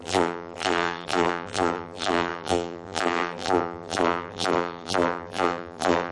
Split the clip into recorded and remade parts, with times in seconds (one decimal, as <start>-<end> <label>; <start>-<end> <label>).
0.0-6.1 remade